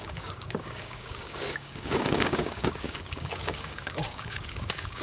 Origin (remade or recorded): remade